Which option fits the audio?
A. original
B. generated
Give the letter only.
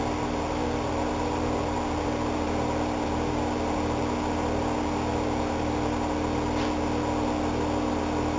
A